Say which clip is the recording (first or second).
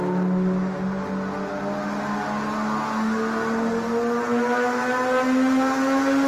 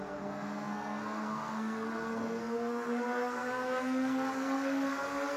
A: first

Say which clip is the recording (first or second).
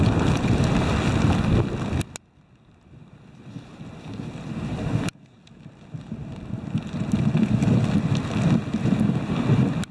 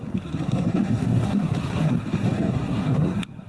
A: first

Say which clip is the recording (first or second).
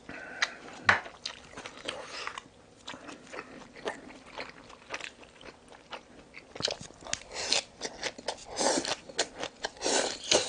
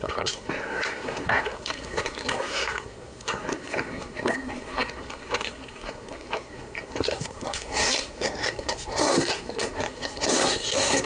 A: first